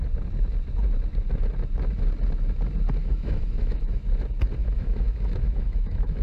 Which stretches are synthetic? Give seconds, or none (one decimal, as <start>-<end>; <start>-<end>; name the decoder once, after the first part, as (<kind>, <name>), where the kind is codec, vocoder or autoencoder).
3.0-4.0 (autoencoder, DAC-VAE); 4.6-6.2